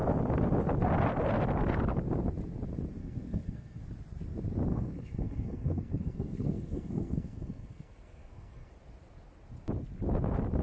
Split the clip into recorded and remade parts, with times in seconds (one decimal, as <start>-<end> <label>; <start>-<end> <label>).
0.0-3.0 recorded; 3.0-3.8 remade; 3.8-4.7 recorded; 4.7-8.7 remade; 8.7-10.6 recorded